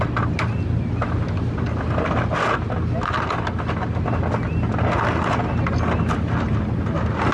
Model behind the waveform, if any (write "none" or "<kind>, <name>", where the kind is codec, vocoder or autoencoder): none